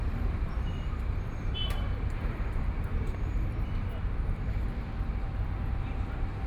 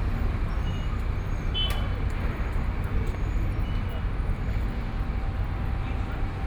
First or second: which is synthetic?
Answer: first